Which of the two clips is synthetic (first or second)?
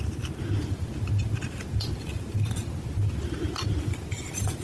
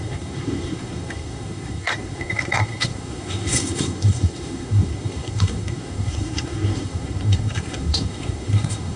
second